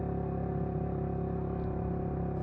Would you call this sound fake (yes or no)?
no